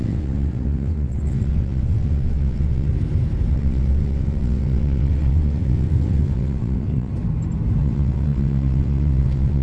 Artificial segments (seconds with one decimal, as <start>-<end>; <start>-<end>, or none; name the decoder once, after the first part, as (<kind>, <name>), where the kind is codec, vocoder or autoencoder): 0.0-2.9 (vocoder, WaveNeXt); 3.5-7.1; 7.8-9.6